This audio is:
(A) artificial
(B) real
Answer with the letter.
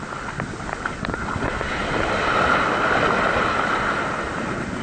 B